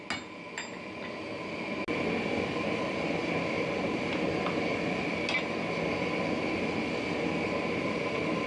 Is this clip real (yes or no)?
yes